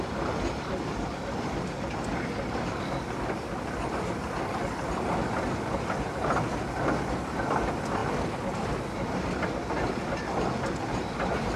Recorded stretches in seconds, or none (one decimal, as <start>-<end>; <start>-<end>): 0.0-11.6